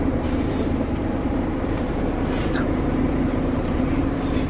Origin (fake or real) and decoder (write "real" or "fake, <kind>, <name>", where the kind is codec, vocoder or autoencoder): fake, vocoder, BigVGAN v2